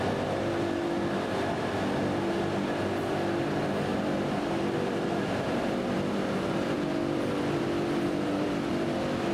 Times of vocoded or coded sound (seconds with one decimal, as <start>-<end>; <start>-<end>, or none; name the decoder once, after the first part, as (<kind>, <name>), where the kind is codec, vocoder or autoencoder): 3.9-8.7 (vocoder, BigVGAN v2)